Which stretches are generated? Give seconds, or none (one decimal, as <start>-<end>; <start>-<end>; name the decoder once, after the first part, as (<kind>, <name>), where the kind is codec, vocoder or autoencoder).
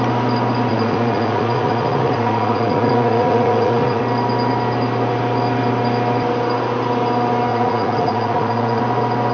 0.7-4.0 (vocoder, Vocos); 7.5-8.8